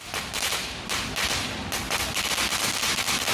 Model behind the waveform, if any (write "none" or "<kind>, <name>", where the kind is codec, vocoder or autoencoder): none